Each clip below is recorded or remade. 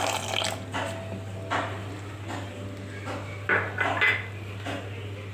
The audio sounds recorded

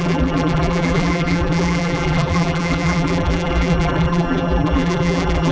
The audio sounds remade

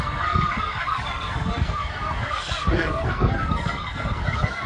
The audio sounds remade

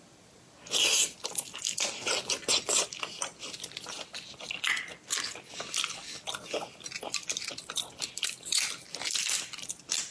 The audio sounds recorded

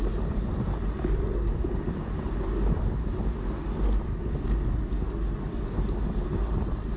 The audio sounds recorded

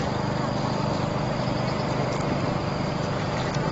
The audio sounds recorded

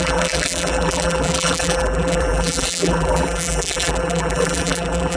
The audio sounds remade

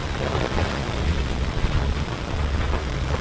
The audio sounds remade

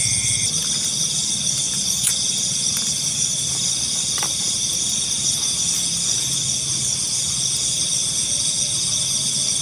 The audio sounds recorded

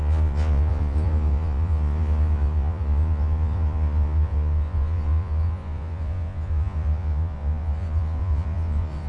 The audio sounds remade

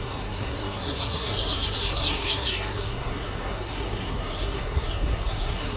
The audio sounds remade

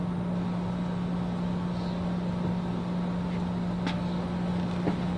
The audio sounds recorded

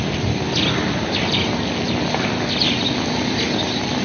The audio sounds recorded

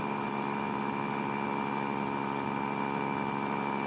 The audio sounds recorded